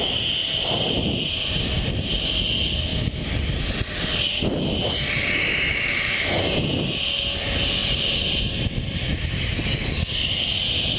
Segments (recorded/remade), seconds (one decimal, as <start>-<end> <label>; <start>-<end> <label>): 0.0-0.4 recorded; 0.4-1.9 remade; 1.9-7.8 recorded; 7.8-8.4 remade; 8.4-11.0 recorded